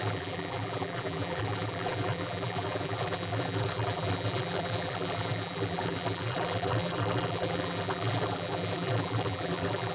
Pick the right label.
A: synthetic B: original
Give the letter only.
A